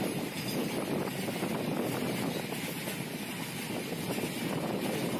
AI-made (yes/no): no